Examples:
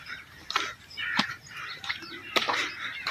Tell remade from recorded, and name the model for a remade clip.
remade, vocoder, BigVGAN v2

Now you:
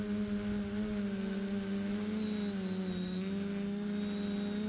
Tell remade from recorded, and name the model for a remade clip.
recorded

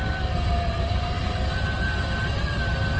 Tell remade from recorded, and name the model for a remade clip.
recorded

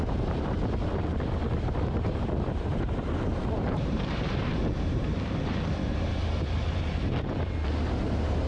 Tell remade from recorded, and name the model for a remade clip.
remade, vocoder, BigVGAN v2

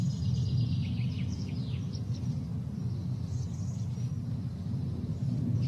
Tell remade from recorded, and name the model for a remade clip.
recorded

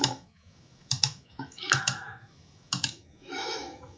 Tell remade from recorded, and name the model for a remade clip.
remade, autoencoder, DAC-VAE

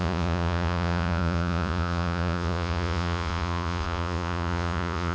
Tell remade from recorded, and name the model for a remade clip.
remade, vocoder, Vocos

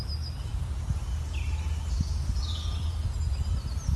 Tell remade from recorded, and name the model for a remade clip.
recorded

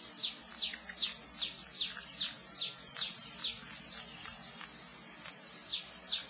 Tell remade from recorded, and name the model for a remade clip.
recorded